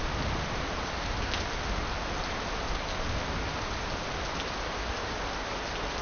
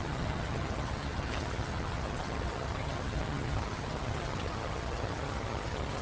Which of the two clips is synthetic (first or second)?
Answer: second